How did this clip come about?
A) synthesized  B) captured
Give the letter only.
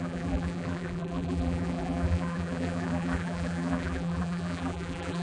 A